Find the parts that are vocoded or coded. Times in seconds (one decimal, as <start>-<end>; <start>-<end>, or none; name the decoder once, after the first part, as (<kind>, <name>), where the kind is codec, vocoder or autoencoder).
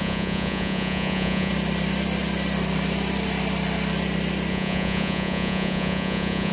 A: 0.0-1.5 (vocoder, Vocos); 4.5-6.5